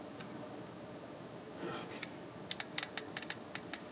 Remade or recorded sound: recorded